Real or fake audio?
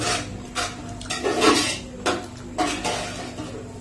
real